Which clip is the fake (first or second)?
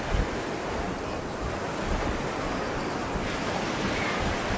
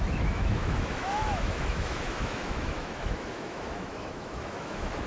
second